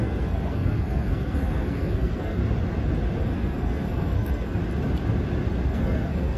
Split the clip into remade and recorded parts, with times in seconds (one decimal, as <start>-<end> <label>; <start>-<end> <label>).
0.0-2.4 remade; 2.4-3.2 recorded; 3.2-4.6 remade; 4.6-5.7 recorded; 5.7-6.4 remade